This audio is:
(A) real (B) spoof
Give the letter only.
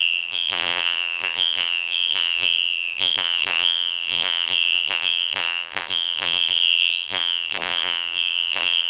B